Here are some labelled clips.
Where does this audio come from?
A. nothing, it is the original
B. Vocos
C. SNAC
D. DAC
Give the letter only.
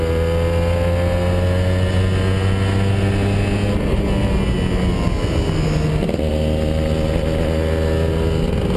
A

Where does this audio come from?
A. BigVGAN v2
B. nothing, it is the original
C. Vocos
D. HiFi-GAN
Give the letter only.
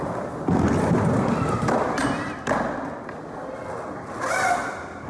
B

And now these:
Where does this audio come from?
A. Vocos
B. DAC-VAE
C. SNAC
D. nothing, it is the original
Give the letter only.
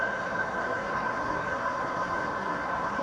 C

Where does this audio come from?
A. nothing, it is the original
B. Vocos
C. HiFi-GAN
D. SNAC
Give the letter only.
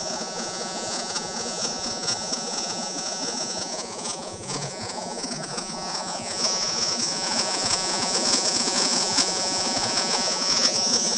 B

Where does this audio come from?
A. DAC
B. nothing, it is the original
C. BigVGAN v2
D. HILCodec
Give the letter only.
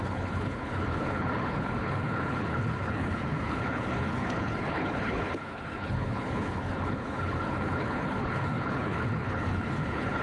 D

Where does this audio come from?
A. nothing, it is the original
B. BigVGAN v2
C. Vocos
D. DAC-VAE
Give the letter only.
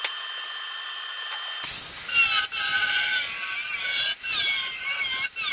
A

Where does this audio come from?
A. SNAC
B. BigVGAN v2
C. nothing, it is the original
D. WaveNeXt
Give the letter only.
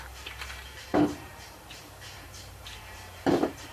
B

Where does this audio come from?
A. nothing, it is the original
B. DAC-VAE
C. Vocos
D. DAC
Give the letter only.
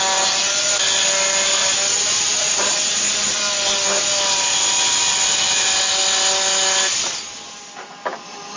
A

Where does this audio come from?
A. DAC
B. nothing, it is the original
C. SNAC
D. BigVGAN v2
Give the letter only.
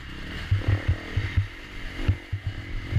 B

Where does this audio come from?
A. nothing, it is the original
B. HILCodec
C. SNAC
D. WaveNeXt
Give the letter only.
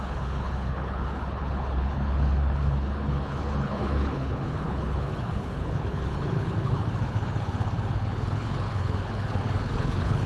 B